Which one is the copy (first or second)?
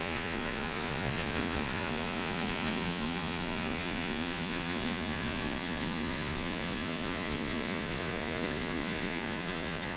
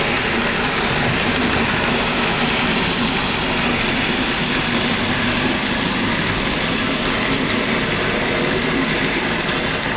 first